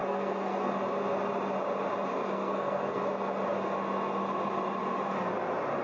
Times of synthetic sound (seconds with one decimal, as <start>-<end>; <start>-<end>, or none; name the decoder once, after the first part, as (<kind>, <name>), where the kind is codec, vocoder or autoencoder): 0.0-0.7 (codec, SNAC); 2.2-3.0